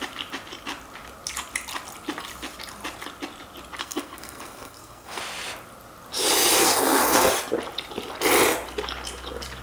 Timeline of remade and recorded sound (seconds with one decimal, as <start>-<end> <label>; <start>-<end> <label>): 0.0-3.8 recorded; 3.8-5.2 remade; 5.2-6.6 recorded; 6.6-7.3 remade; 7.3-9.6 recorded